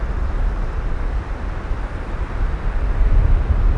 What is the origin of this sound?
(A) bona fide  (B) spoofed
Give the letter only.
A